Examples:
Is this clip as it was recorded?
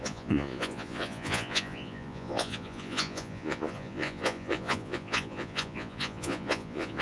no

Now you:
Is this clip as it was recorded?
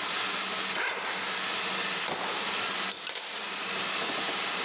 yes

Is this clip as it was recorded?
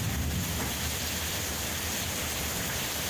yes